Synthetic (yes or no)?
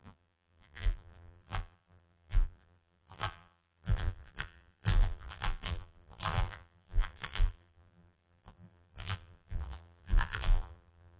yes